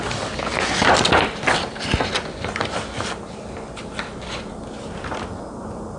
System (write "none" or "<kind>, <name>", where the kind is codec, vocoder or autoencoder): none